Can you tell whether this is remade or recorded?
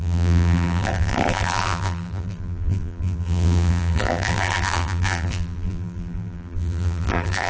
remade